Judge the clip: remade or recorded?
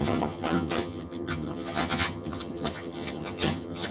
remade